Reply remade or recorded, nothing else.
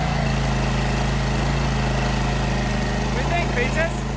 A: recorded